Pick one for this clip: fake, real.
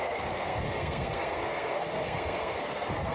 fake